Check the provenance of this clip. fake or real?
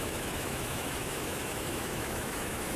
fake